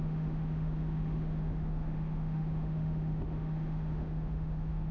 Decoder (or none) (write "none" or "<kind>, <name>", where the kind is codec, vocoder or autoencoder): autoencoder, DAC-VAE